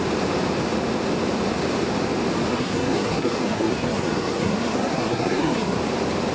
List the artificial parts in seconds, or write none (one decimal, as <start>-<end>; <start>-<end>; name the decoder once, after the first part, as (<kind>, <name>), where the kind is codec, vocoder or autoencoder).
2.5-5.8 (codec, SNAC)